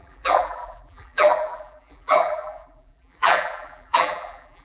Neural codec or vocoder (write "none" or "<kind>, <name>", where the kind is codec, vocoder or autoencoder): vocoder, BigVGAN v2